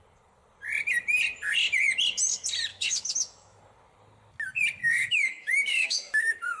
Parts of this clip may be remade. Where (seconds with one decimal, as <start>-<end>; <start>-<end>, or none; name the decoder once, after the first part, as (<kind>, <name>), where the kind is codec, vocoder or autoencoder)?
2.7-3.6 (autoencoder, DAC-VAE); 4.8-6.6